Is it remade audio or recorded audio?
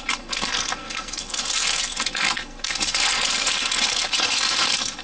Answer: remade